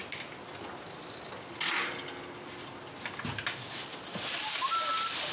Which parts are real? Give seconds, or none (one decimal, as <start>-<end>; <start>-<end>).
0.0-5.3